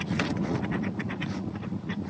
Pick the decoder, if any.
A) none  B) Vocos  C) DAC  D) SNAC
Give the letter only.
B